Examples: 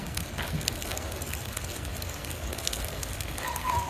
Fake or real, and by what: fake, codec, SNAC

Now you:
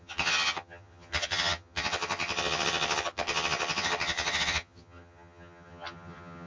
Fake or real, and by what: fake, vocoder, HiFi-GAN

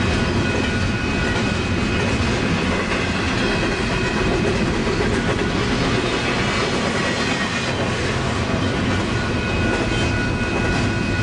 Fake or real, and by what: real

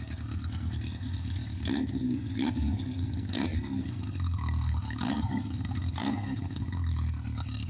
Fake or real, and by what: fake, codec, SNAC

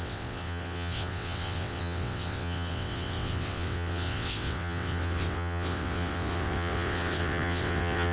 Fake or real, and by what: fake, vocoder, WaveNeXt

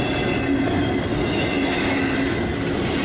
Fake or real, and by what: real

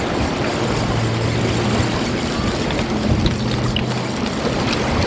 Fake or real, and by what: real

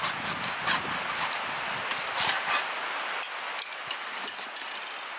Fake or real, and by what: real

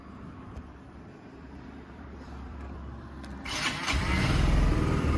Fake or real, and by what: fake, vocoder, BigVGAN v2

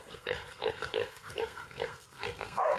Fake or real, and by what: fake, codec, SNAC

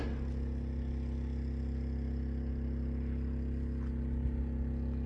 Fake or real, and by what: real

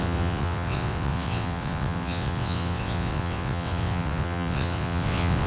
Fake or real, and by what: fake, vocoder, WaveNeXt